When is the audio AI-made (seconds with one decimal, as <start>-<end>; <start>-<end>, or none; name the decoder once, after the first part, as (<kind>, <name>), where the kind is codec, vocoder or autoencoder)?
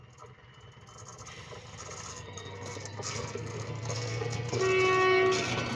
2.1-4.6 (codec, SNAC)